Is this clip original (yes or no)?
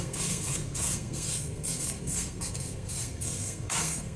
no